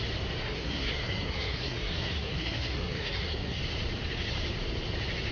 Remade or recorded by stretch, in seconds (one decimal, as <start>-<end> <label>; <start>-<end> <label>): 0.0-0.4 recorded; 0.4-3.6 remade; 3.6-5.3 recorded